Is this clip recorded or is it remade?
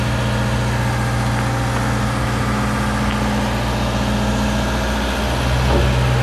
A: recorded